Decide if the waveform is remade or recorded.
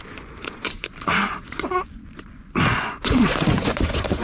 remade